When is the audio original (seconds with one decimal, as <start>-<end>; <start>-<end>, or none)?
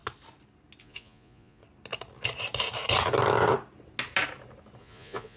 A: 0.0-0.8; 1.6-4.8